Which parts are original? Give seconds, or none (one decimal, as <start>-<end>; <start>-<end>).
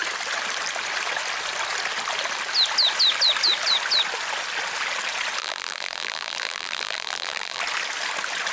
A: 0.0-5.4; 7.6-8.5